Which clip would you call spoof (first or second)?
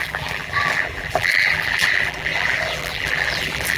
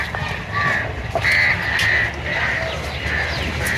first